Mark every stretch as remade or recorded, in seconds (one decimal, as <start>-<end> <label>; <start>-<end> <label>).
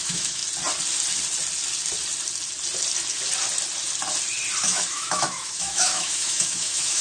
0.0-0.4 remade; 0.4-4.6 recorded; 4.6-7.0 remade